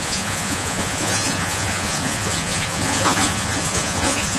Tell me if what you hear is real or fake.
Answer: fake